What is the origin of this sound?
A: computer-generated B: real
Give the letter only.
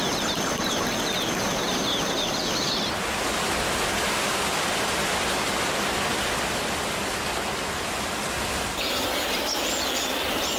B